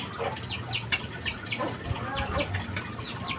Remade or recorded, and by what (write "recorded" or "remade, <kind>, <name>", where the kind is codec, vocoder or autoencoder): recorded